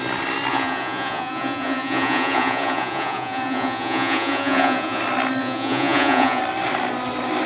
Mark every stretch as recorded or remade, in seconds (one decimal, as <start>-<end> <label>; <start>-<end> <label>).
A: 0.0-0.5 recorded; 0.5-5.0 remade; 5.0-5.4 recorded; 5.4-6.4 remade; 6.4-7.5 recorded